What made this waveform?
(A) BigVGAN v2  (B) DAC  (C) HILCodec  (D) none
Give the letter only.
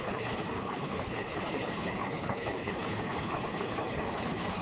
C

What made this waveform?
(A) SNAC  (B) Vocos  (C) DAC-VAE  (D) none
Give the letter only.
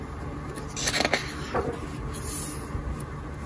D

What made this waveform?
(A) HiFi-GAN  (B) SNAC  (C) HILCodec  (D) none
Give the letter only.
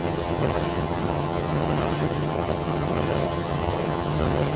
A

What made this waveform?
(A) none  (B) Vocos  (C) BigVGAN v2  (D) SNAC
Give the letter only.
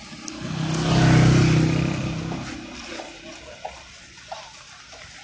A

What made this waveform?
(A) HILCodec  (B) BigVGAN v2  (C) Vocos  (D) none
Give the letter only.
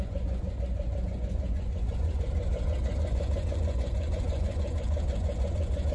C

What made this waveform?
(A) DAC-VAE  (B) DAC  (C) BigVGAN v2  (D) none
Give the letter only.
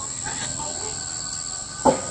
D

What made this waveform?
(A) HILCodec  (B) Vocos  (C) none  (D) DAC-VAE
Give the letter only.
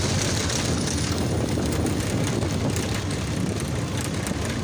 C